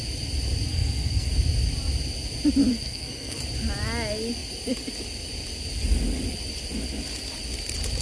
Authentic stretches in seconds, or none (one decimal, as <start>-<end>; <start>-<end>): 0.0-0.7; 1.3-2.7; 3.4-8.0